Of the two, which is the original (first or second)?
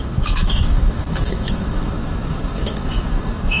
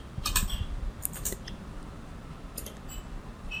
second